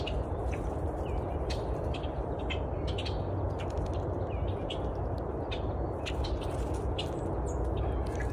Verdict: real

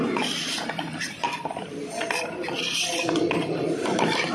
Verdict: fake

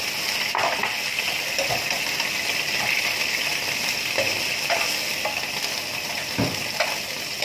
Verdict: real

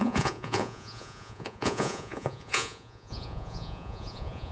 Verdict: fake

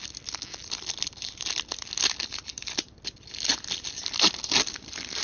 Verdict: real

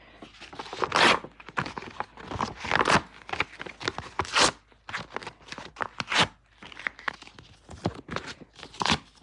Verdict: real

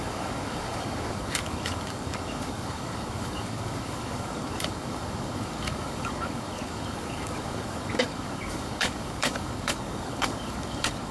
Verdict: fake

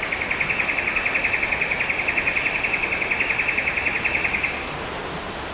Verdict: real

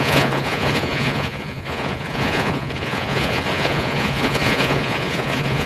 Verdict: fake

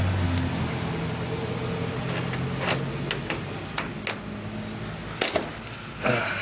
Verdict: real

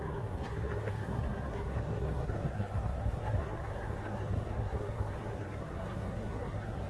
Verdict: fake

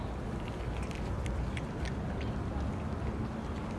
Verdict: real